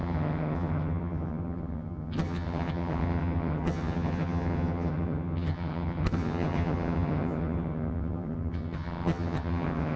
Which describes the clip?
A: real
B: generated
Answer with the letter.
B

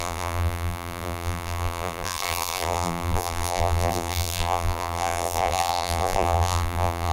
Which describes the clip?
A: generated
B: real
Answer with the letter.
A